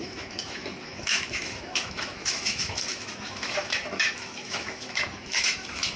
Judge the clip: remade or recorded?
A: remade